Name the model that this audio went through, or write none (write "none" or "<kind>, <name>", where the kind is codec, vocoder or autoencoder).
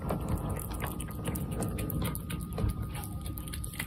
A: none